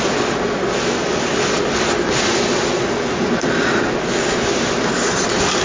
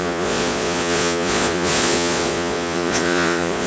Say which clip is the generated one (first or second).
second